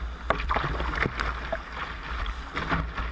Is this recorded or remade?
recorded